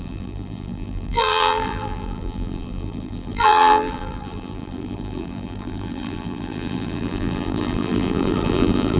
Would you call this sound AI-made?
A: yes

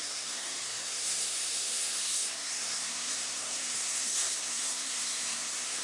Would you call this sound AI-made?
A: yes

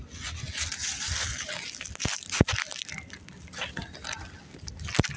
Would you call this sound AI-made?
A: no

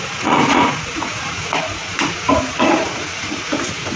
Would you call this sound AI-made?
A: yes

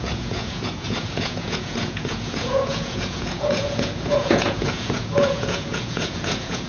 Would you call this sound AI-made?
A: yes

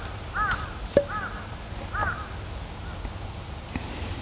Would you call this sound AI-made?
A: no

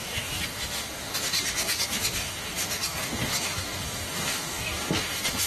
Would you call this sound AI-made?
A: yes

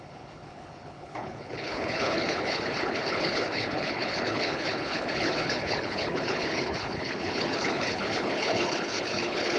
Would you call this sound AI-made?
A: yes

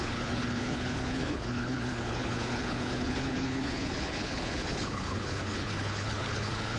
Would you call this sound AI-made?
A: yes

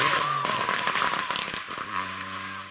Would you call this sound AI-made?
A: no